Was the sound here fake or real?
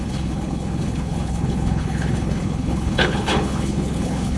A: fake